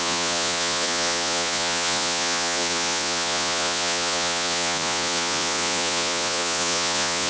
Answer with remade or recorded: remade